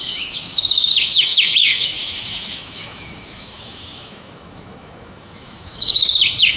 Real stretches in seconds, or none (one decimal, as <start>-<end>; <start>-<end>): none